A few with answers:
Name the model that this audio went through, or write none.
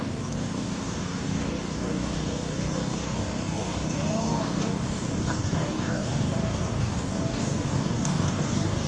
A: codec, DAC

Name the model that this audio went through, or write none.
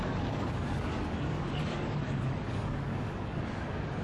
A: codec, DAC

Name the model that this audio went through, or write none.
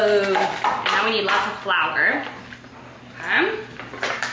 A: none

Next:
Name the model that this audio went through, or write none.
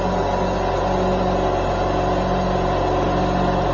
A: none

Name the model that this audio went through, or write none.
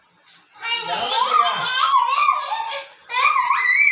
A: none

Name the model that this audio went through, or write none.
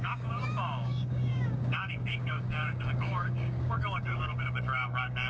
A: codec, DAC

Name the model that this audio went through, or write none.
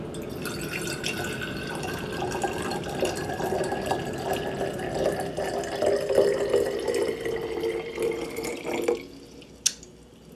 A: none